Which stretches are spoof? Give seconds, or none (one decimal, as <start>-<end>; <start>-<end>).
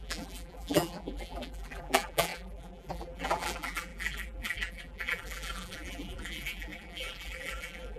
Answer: 0.0-8.0